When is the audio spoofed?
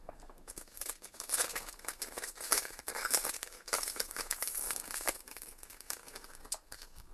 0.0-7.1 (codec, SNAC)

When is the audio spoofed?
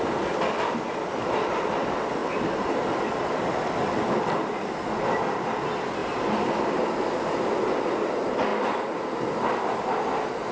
none